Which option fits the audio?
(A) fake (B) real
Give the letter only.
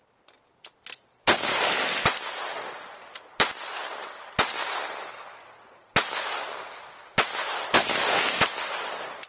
A